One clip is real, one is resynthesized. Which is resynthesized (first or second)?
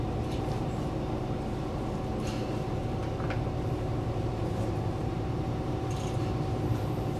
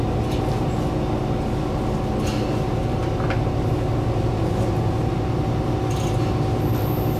first